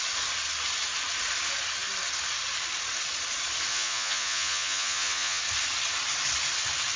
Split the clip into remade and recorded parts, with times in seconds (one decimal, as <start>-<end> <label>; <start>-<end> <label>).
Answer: 0.0-3.7 recorded; 3.7-5.4 remade; 5.4-7.0 recorded